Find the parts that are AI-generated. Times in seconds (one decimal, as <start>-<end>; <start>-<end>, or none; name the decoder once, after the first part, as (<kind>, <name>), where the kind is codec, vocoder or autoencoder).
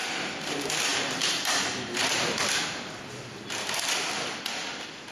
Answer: 0.9-2.4 (vocoder, BigVGAN v2)